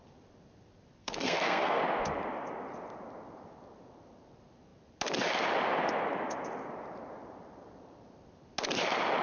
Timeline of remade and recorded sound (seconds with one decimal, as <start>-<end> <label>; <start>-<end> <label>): 0.0-1.0 recorded; 1.0-1.8 remade; 1.8-9.2 recorded